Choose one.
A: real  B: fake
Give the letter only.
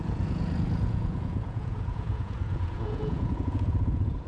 B